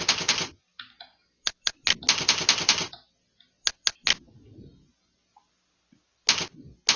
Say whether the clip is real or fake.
real